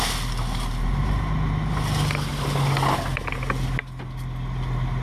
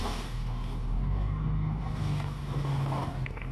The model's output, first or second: second